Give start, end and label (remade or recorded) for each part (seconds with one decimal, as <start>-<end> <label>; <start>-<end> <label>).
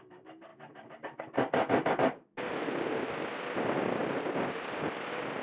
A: 0.0-5.4 recorded